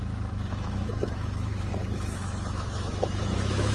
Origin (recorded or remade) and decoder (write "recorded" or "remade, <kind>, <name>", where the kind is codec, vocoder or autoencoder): remade, autoencoder, DAC-VAE